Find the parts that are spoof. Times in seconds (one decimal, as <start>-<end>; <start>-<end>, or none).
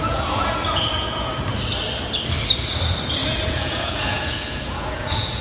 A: 0.0-1.3; 3.3-5.4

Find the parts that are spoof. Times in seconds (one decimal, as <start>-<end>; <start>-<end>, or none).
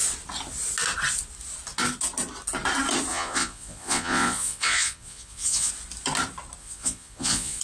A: 3.1-5.7; 6.6-7.6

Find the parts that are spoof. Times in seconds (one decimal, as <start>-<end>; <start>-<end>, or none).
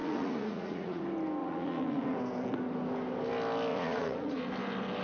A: 0.0-1.0; 1.4-2.2; 3.7-4.5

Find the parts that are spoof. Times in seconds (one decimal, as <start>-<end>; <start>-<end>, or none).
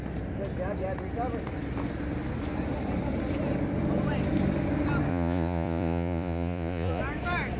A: 5.1-7.0